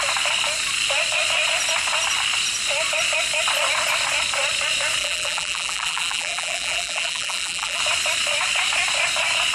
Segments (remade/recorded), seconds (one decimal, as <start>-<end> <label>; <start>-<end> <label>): 0.0-5.0 recorded; 5.0-7.8 remade; 7.8-9.5 recorded